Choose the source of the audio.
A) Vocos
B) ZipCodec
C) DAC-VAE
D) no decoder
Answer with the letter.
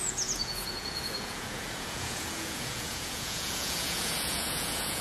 A